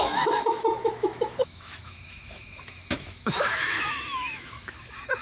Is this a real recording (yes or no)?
no